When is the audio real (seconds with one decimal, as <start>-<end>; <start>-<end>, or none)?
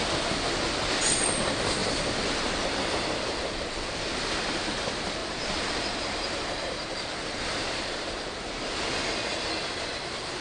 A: 0.0-1.8; 4.3-5.2; 8.8-9.9